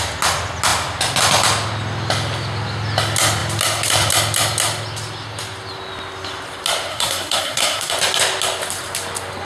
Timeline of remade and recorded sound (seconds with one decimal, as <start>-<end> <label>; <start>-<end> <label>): 0.0-6.9 recorded; 6.9-7.9 remade; 7.9-9.4 recorded